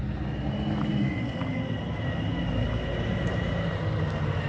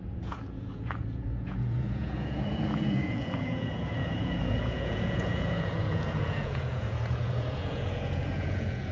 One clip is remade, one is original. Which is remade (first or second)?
second